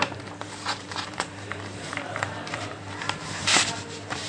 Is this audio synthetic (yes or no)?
yes